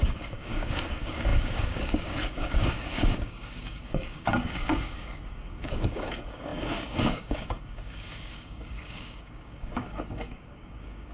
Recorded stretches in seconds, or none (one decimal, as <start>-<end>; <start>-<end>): none